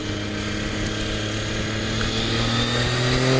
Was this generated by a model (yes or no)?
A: no